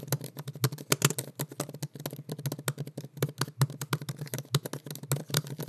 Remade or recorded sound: recorded